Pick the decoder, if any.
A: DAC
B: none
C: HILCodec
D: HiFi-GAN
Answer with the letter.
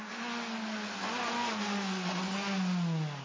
B